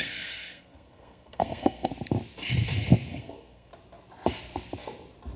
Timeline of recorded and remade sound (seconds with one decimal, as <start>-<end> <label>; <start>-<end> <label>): 0.0-1.9 remade; 1.9-3.1 recorded; 3.1-3.7 remade; 3.7-5.4 recorded